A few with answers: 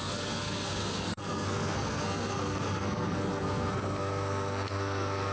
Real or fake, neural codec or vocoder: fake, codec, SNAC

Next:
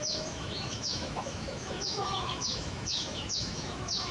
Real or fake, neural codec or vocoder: fake, autoencoder, DAC-VAE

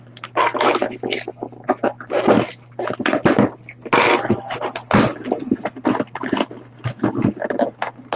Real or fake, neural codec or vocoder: real